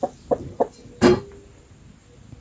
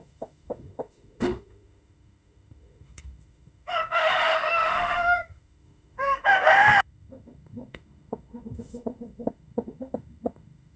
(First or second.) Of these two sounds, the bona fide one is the first